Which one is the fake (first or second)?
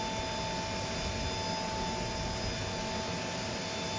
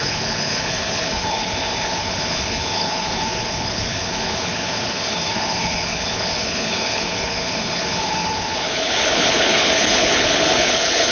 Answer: second